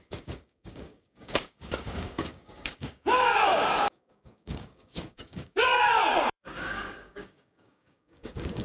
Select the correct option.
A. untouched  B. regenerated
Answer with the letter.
B